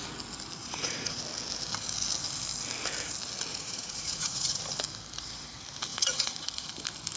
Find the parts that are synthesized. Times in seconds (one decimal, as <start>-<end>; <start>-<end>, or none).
0.6-1.2; 3.5-4.6; 5.9-6.7